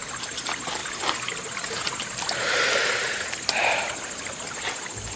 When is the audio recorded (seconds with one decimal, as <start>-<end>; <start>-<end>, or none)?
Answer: 0.0-5.2